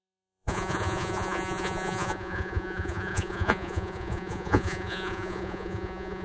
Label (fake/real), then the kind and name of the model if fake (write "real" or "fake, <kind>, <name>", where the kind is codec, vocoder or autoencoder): fake, vocoder, Vocos